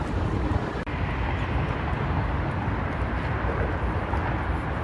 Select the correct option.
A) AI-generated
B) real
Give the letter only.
B